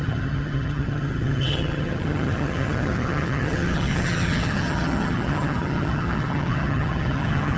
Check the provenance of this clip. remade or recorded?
remade